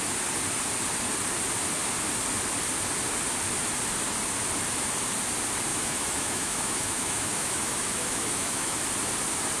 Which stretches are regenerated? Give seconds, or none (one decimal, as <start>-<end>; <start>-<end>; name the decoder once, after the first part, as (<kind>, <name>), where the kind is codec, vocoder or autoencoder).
5.7-8.8 (autoencoder, DAC-VAE)